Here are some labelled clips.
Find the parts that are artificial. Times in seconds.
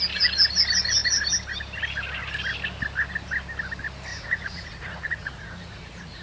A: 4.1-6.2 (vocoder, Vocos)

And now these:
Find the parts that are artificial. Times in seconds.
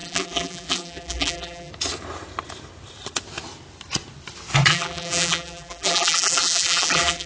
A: 0.0-1.7 (vocoder, BigVGAN v2); 4.7-7.3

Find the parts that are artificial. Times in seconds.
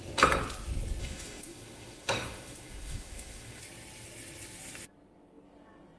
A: 1.0-3.6 (autoencoder, DAC-VAE)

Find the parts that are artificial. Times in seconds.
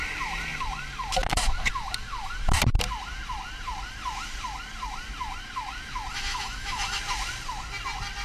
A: 6.1-7.0 (autoencoder, DAC-VAE)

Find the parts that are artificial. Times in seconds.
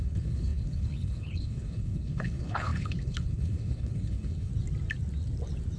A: 0.0-4.5 (codec, HILCodec)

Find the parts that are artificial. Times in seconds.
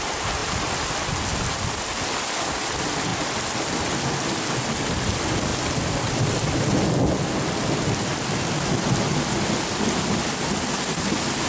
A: none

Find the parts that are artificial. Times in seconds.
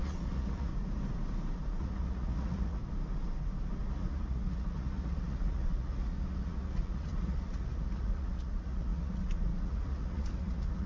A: 0.0-0.7 (vocoder, Vocos); 1.8-2.8; 3.9-10.9